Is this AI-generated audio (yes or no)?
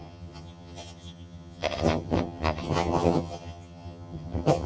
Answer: yes